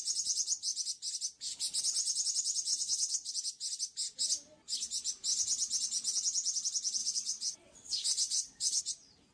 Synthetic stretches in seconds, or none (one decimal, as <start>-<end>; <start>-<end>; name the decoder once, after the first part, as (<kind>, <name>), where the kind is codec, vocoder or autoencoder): 2.7-3.3 (vocoder, WaveNeXt); 7.0-8.8